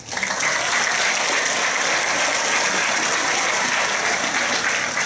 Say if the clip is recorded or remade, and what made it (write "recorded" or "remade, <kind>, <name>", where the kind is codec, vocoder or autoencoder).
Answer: recorded